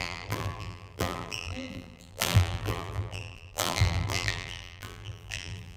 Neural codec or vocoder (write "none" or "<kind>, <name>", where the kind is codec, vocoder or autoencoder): vocoder, BigVGAN v2